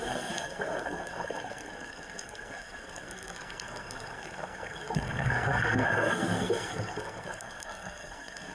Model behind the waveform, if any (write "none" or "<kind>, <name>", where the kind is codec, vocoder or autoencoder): codec, SNAC